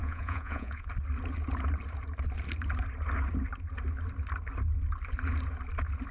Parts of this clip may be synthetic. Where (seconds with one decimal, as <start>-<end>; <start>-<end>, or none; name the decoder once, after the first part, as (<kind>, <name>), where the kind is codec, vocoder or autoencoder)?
0.0-0.9 (vocoder, Vocos)